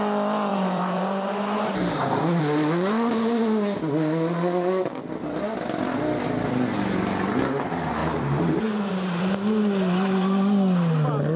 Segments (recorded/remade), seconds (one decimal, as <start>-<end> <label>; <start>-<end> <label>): 0.0-0.5 recorded; 0.5-2.4 remade; 2.4-8.0 recorded; 8.0-9.2 remade; 9.2-11.4 recorded